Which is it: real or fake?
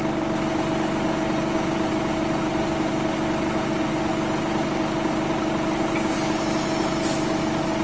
real